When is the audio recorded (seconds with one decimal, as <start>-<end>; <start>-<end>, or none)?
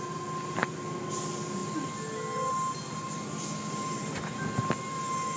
0.0-5.4